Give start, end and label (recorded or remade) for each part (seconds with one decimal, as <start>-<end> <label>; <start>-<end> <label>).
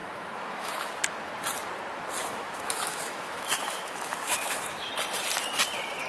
0.0-0.9 remade; 0.9-2.2 recorded; 2.2-4.9 remade; 4.9-6.1 recorded